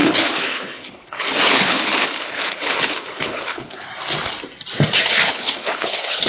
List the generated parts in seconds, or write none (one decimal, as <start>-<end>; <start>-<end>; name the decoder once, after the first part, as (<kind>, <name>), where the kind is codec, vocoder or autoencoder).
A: 0.0-3.9 (codec, HILCodec); 5.3-6.3